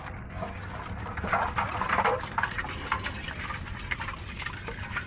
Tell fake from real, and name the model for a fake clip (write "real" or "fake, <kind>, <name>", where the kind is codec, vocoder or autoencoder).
real